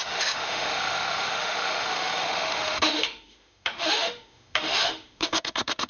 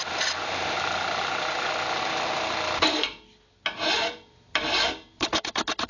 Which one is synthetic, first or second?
first